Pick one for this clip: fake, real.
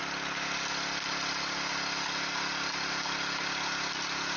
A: real